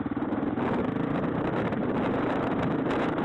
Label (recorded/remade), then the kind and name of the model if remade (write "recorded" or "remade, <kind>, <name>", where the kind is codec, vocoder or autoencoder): remade, vocoder, BigVGAN v2